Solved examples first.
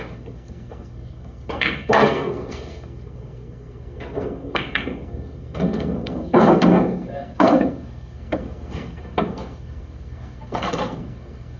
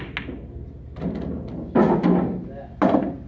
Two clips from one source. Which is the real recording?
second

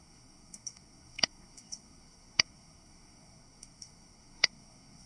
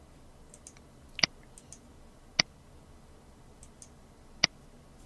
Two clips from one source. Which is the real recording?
second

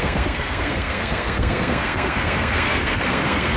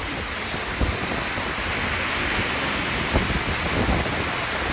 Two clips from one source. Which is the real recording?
second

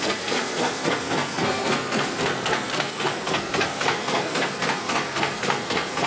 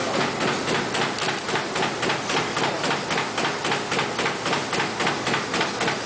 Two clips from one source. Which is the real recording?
second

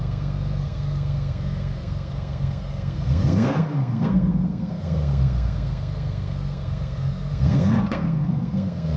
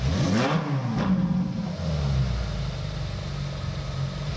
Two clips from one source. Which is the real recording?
second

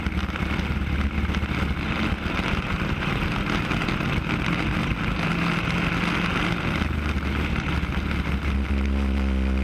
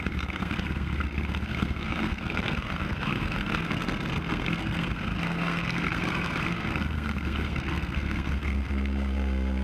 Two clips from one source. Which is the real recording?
first